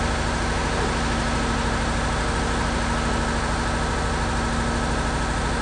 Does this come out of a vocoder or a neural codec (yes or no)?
no